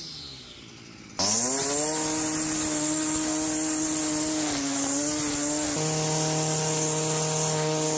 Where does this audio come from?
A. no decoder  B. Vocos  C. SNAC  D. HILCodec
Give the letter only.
A